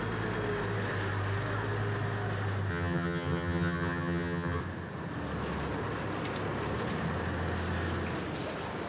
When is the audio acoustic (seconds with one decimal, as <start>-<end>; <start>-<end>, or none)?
0.0-2.7; 4.6-8.9